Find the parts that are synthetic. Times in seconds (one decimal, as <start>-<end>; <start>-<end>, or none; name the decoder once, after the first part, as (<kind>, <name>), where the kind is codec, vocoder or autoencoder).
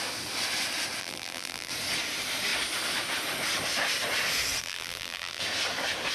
1.0-1.7 (vocoder, BigVGAN v2); 4.6-5.4